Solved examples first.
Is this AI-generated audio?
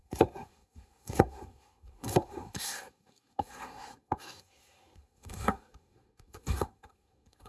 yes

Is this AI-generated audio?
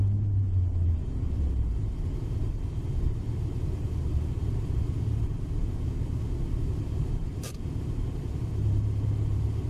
no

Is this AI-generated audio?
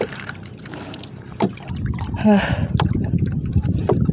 yes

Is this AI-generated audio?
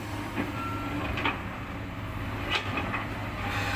no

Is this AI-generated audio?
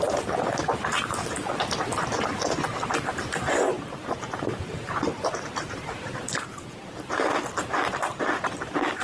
yes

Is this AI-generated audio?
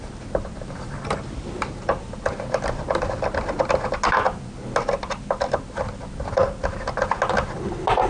no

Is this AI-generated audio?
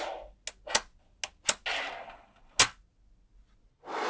no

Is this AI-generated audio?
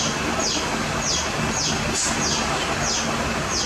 no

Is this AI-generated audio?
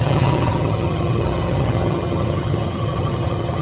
yes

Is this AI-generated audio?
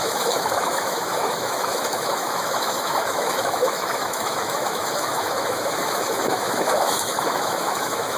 yes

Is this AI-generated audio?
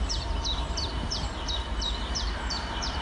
yes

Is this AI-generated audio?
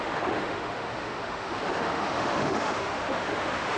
yes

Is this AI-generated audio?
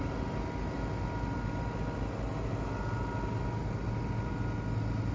no